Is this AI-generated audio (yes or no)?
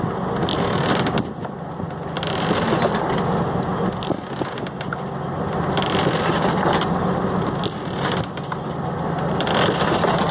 no